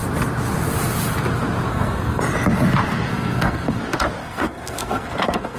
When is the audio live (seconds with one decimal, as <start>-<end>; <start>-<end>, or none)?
0.0-1.7; 2.2-3.1; 3.8-4.2